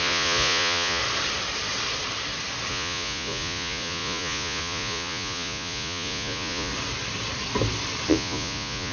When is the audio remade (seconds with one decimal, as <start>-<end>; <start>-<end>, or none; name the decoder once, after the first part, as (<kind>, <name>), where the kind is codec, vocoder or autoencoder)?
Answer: 0.0-1.0 (vocoder, Vocos); 2.7-6.7; 8.1-8.9